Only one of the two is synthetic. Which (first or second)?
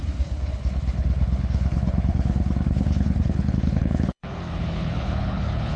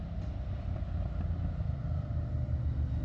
first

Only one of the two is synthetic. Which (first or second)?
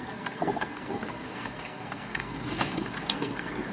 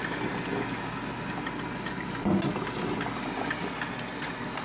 first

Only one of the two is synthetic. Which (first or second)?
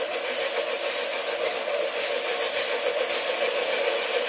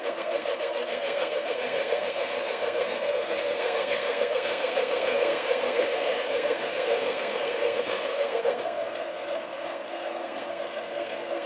second